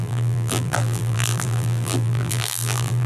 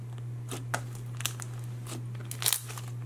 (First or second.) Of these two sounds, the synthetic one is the first